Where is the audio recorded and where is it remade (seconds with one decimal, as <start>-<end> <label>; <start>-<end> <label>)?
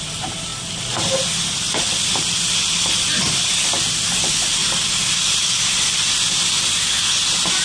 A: 0.0-4.6 recorded; 4.6-6.9 remade; 6.9-7.6 recorded